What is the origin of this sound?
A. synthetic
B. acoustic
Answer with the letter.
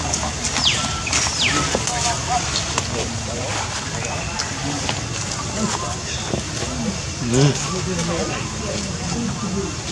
B